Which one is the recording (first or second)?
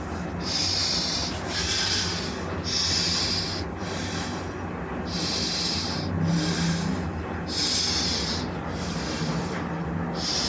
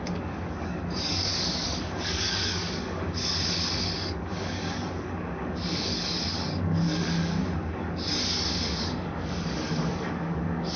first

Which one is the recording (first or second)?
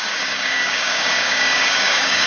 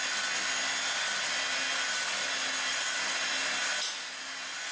second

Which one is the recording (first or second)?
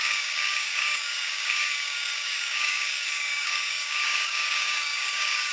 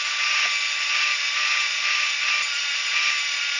second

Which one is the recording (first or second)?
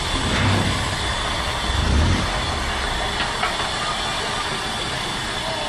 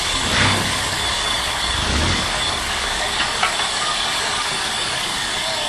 first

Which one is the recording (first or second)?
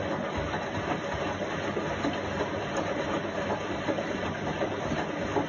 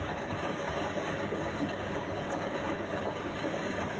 first